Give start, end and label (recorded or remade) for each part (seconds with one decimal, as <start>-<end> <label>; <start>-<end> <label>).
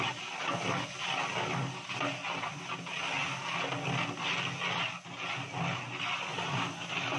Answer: 0.0-7.2 recorded